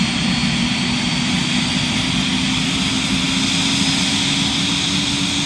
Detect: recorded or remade recorded